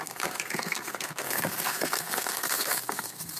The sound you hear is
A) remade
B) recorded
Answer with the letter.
A